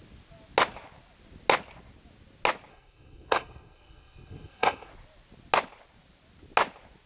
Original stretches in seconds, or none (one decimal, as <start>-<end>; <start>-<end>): 0.0-2.7; 4.9-7.1